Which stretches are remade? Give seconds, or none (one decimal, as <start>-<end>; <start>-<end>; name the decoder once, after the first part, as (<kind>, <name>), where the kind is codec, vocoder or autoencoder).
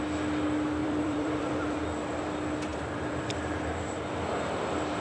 0.8-1.8 (vocoder, BigVGAN v2); 2.7-4.0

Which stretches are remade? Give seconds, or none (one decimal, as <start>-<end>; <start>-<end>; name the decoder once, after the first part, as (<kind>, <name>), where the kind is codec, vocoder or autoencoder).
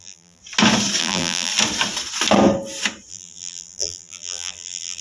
0.0-0.4 (vocoder, BigVGAN v2); 1.0-1.5; 3.1-5.0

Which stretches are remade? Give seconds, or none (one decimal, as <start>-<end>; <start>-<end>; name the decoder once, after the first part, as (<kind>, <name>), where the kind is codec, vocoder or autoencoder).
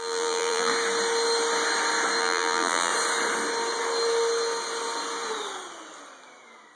0.0-0.7 (vocoder, BigVGAN v2); 2.2-2.9